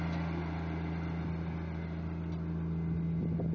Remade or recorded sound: recorded